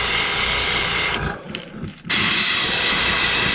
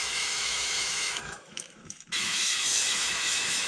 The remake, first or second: second